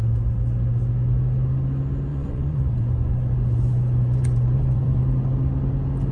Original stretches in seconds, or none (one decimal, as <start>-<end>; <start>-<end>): 0.0-2.1; 5.0-6.1